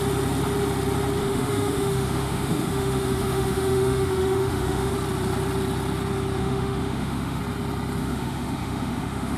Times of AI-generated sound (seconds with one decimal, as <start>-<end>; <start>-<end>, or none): 1.2-4.9; 6.4-7.4; 8.0-9.4